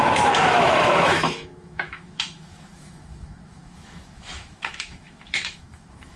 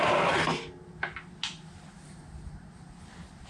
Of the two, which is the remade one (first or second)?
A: first